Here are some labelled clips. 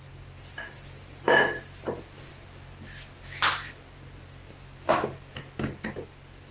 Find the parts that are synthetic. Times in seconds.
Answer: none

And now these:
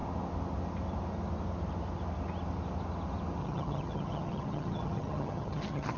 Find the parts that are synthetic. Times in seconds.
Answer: 3.4-6.0 (vocoder, HiFi-GAN)

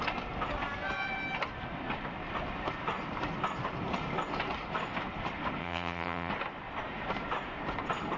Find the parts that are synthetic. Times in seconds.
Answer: 5.6-6.3 (vocoder, HiFi-GAN)